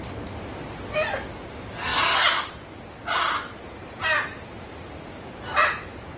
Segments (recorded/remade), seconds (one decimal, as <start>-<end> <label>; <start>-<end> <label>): 0.0-6.2 recorded